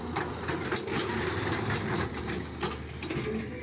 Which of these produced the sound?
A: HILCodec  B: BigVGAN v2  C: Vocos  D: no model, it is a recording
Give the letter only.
D